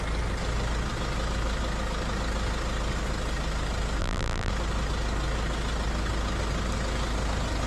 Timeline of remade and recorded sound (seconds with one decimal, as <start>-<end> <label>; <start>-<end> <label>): 0.0-4.0 recorded; 4.0-4.5 remade; 4.5-7.7 recorded